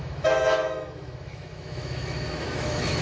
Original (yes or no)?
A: no